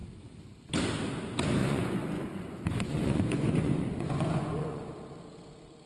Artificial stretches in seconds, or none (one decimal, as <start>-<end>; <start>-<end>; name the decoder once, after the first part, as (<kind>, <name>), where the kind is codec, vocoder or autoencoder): 1.6-4.9 (vocoder, Vocos)